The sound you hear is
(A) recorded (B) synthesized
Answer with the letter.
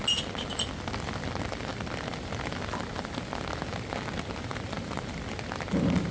A